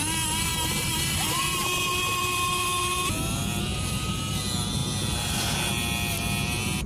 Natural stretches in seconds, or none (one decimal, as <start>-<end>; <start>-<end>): 0.0-0.5; 3.1-3.7; 4.3-6.9